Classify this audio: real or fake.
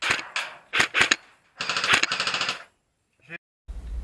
real